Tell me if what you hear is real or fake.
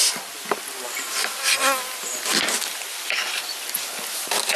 real